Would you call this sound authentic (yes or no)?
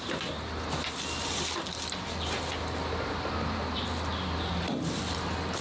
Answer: yes